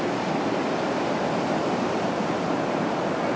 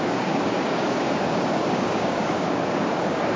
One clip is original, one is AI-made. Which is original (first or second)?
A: first